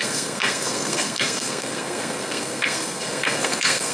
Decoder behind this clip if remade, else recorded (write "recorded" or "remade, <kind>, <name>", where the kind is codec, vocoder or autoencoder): remade, codec, SNAC